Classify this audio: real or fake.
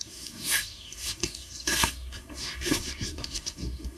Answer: fake